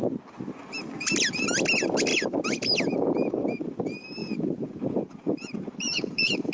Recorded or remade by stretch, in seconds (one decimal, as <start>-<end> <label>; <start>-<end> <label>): 0.0-4.2 recorded; 4.2-6.5 remade